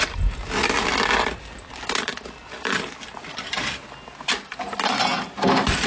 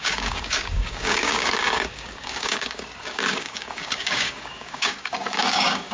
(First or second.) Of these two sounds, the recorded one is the first